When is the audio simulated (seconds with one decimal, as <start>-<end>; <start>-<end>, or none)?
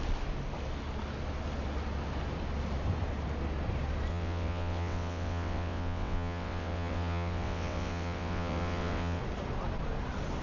4.1-9.2